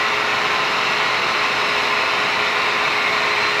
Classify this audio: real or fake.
real